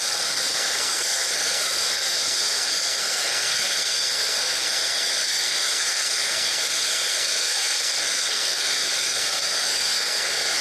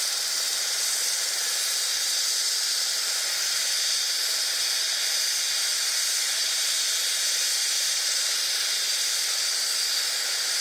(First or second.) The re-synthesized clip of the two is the first